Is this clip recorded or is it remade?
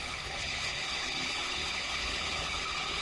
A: remade